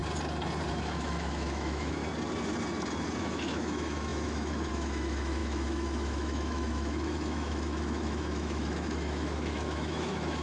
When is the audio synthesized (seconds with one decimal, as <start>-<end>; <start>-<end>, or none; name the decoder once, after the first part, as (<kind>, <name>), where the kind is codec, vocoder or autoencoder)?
0.7-2.0 (autoencoder, DAC-VAE); 3.2-10.4